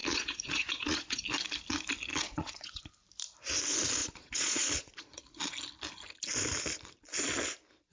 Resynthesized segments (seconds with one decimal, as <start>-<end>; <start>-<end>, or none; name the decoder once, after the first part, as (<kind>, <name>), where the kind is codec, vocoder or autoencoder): 0.0-1.2 (vocoder, Vocos); 2.1-2.8; 4.0-5.2